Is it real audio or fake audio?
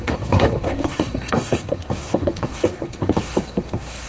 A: fake